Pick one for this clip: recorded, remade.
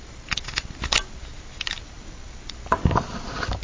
recorded